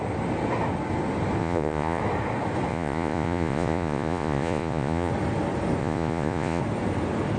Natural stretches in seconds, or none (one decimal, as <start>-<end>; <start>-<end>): 0.0-1.4; 2.0-2.7; 5.1-5.8; 6.6-7.4